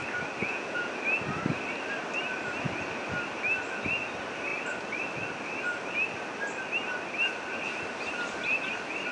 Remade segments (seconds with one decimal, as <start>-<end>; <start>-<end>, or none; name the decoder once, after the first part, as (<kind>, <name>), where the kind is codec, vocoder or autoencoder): 0.4-0.9 (vocoder, Vocos)